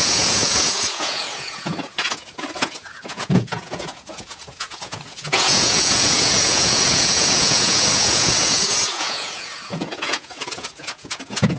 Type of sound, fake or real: fake